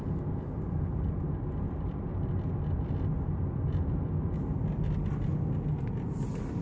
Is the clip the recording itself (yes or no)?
yes